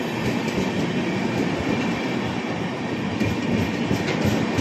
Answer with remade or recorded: recorded